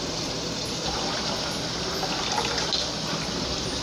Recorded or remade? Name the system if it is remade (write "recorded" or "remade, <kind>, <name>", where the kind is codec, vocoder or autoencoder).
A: recorded